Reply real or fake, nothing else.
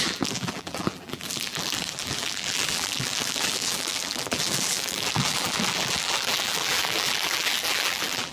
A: fake